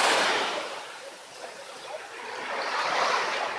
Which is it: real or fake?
fake